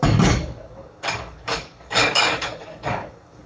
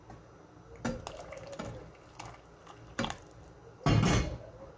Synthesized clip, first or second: first